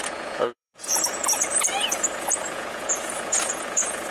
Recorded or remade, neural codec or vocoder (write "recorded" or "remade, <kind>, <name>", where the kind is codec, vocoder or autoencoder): remade, vocoder, Vocos